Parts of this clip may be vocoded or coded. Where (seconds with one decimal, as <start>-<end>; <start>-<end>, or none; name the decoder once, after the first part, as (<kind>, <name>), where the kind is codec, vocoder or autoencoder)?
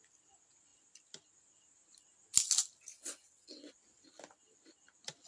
2.9-3.7 (vocoder, WaveNeXt)